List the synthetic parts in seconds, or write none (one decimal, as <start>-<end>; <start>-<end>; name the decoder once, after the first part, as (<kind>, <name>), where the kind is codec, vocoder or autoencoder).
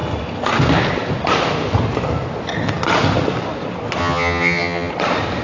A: 4.0-4.9 (vocoder, HiFi-GAN)